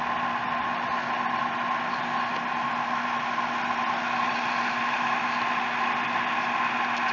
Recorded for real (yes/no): yes